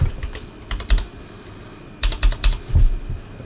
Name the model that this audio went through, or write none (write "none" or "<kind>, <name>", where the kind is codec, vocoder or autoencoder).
none